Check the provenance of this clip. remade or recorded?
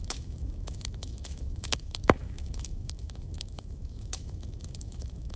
remade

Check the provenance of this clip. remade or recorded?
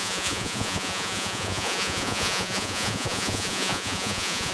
remade